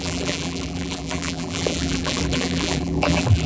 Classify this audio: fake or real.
fake